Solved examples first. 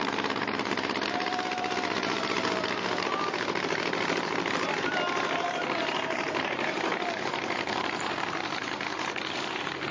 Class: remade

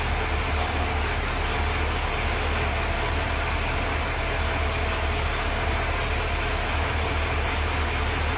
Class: recorded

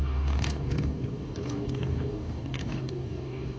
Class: remade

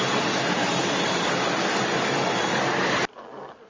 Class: recorded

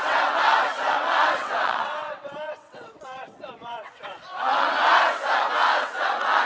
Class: remade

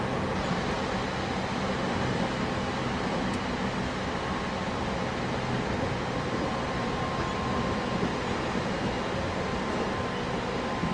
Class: recorded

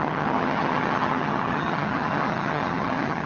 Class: remade